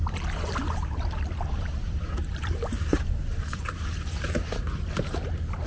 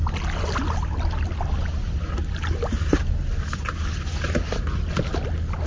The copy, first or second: first